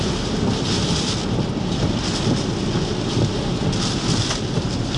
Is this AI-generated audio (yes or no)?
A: no